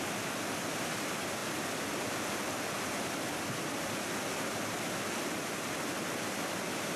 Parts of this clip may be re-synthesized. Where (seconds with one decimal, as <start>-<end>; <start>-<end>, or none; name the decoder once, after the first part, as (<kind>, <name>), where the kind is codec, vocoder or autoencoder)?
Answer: none

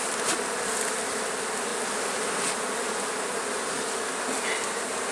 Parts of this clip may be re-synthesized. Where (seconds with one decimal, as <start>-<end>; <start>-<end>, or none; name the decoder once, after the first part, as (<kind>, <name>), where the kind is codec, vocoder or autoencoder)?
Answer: none

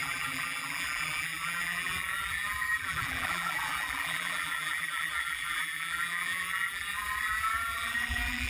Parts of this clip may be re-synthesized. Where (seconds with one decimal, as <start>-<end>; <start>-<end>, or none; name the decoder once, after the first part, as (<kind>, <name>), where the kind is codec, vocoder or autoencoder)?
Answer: 0.0-8.5 (vocoder, BigVGAN v2)

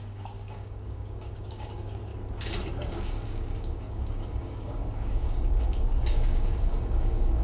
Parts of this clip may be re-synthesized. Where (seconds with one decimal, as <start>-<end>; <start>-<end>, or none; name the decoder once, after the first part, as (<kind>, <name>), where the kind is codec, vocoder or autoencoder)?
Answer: 0.0-2.1 (codec, DAC); 2.7-7.4